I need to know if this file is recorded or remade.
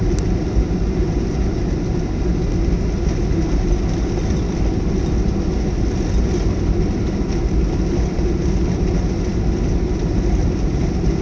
recorded